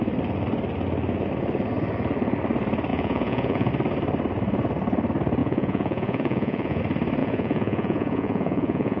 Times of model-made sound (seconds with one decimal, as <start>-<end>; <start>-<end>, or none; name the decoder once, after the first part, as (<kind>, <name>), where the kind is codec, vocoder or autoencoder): 2.9-3.7 (vocoder, Vocos); 5.4-6.8; 7.2-9.0

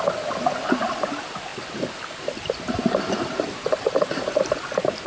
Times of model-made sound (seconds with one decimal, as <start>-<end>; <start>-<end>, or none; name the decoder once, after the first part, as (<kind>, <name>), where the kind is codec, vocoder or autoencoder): none

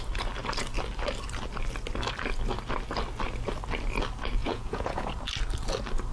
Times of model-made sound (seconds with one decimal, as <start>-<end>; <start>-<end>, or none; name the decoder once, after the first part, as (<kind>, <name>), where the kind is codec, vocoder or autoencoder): 4.4-5.1 (vocoder, Vocos)

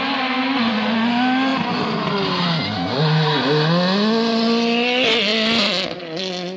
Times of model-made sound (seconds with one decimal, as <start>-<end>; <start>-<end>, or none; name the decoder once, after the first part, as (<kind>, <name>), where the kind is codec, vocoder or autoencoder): none

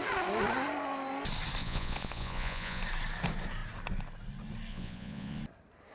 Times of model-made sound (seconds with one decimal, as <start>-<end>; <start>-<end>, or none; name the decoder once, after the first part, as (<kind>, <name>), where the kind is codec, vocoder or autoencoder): 1.6-2.8 (vocoder, Vocos); 4.7-5.4

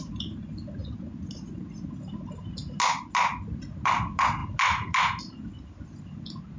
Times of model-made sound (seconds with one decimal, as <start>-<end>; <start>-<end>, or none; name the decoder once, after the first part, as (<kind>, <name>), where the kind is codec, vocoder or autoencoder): none